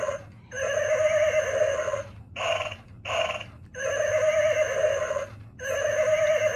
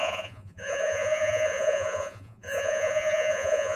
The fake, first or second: second